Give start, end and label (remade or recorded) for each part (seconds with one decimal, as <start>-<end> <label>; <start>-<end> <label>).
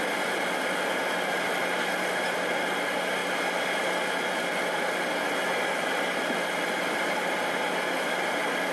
0.0-8.7 recorded